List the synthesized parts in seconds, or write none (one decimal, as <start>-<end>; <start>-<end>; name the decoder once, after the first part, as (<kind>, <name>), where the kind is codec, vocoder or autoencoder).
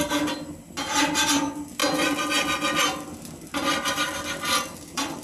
none